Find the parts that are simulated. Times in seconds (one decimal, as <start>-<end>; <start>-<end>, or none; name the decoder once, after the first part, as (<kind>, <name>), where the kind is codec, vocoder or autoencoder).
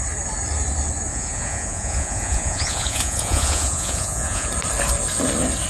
1.1-4.5 (vocoder, Vocos)